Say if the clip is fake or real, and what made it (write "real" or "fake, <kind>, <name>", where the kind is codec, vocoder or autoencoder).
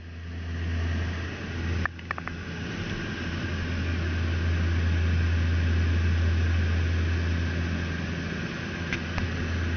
real